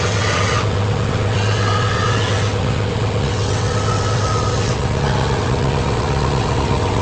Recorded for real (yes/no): no